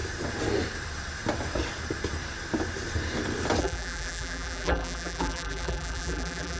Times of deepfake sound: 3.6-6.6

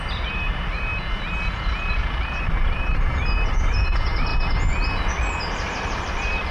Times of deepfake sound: 0.0-0.9; 1.9-4.3; 5.1-6.5

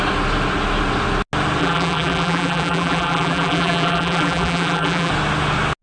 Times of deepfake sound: 1.6-5.1

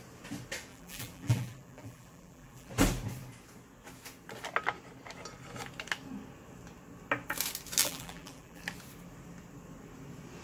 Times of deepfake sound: 0.7-2.7; 7.8-8.6

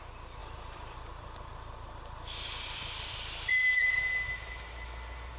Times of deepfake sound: 0.4-3.5

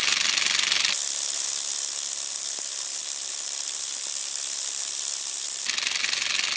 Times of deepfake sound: 3.0-6.6